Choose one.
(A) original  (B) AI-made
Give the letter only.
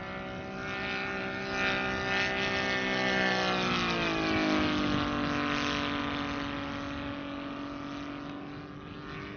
A